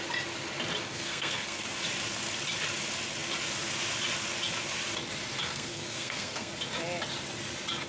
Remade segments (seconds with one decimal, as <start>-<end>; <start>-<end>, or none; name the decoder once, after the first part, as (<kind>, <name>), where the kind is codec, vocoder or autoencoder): 0.8-1.6 (codec, SNAC); 5.4-6.5